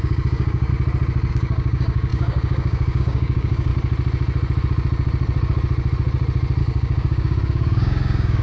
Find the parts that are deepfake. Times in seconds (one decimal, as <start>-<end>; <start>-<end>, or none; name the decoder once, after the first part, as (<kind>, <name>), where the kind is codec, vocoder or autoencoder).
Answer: 0.0-0.7 (codec, DAC); 1.3-3.7; 6.6-8.4